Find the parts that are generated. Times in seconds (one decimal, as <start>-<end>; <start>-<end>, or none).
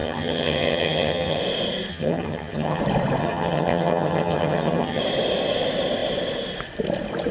0.0-1.4; 1.9-2.8; 3.2-5.0